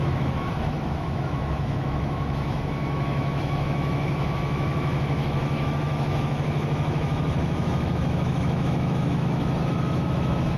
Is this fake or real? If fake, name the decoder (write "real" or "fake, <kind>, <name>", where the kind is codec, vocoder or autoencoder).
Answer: fake, autoencoder, DAC-VAE